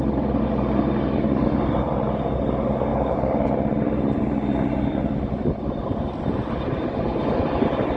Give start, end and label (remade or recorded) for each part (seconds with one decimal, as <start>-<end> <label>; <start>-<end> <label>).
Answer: 0.0-8.0 recorded